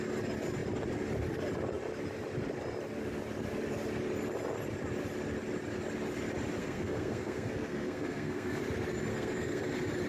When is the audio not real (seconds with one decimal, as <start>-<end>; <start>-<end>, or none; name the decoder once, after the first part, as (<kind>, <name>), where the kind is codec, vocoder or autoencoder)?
6.6-8.6 (codec, SNAC); 9.1-9.6